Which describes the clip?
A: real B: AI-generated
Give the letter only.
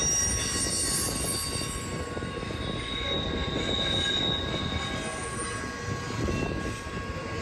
A